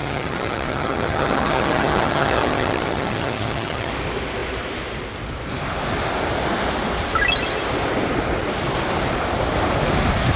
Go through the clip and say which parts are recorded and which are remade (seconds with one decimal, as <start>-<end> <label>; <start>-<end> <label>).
0.0-3.9 remade; 3.9-10.4 recorded